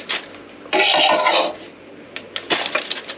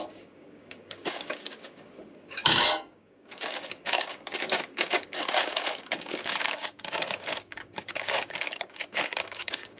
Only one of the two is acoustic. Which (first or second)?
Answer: first